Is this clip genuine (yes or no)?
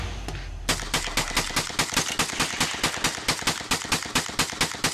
yes